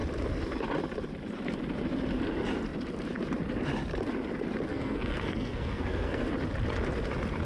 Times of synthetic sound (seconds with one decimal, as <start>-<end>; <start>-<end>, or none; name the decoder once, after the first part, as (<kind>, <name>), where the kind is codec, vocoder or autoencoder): 4.7-6.3 (codec, SNAC)